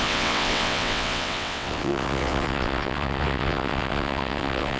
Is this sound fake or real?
fake